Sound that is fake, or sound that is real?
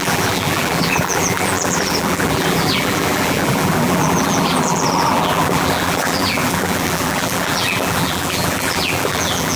fake